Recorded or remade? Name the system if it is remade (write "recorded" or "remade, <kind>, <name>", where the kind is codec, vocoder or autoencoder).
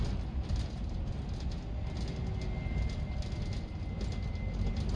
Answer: recorded